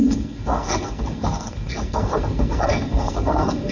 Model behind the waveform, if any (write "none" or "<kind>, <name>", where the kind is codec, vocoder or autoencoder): codec, SNAC